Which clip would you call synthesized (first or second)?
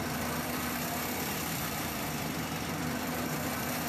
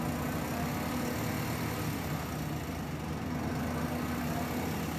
first